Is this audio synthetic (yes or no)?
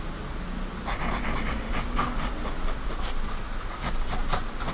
no